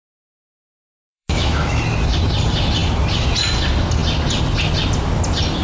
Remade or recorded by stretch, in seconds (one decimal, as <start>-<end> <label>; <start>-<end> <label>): 0.0-1.0 recorded; 1.0-1.8 remade; 1.8-5.6 recorded